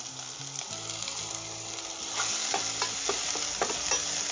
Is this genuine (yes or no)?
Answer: yes